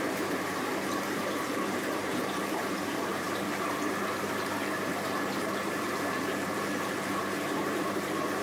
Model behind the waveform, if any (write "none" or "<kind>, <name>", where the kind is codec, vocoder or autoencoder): vocoder, BigVGAN v2